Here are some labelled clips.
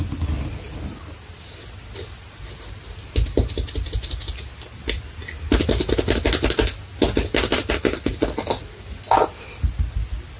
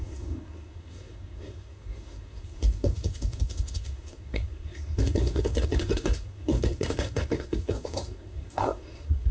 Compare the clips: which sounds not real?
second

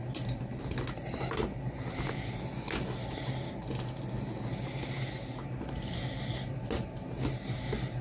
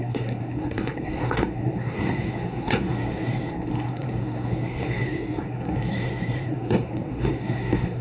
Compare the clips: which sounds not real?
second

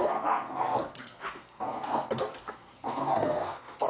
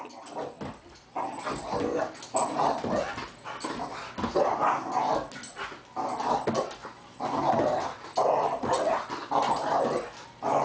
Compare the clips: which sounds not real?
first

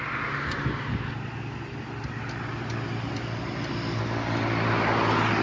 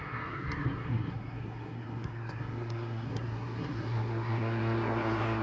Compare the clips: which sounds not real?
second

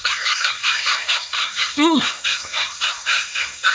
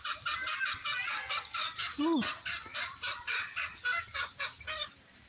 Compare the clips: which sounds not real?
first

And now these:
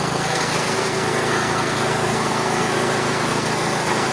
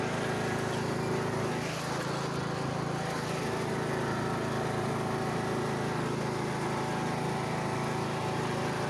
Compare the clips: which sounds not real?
first